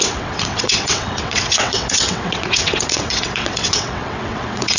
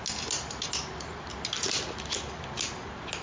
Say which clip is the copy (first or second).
first